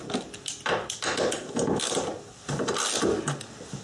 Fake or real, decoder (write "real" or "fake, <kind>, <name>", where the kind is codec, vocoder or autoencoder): real